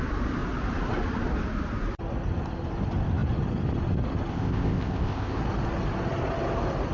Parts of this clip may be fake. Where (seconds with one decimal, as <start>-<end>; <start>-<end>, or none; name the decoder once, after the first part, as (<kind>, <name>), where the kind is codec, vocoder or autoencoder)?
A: 4.3-5.4 (codec, ZipCodec)